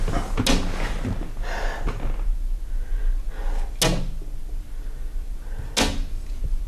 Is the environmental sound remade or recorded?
recorded